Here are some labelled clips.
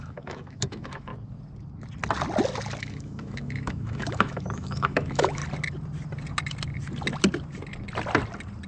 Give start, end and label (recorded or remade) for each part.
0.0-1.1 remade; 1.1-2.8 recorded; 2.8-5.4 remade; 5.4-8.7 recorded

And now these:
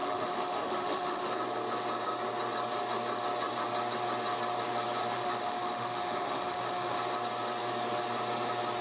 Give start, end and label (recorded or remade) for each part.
0.0-1.3 remade; 1.3-5.0 recorded; 5.0-7.0 remade; 7.0-8.8 recorded

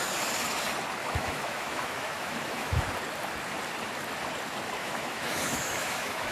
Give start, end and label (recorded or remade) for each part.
0.0-1.0 recorded; 1.0-2.9 remade; 2.9-4.8 recorded; 4.8-6.3 remade

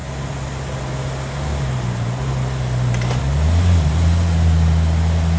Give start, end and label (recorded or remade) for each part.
0.0-5.4 recorded